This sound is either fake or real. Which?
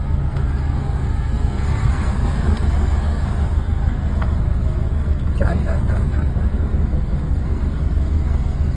fake